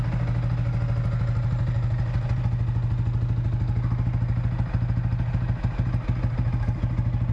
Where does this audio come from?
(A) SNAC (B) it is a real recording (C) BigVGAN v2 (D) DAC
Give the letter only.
B